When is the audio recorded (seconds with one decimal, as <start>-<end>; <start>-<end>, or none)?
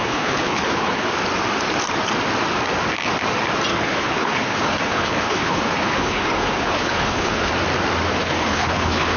1.1-3.7; 7.5-8.2